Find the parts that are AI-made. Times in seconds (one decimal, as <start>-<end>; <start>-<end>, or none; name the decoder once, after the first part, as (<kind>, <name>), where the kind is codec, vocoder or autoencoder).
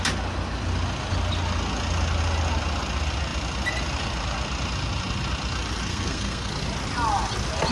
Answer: 5.9-6.5 (codec, SNAC)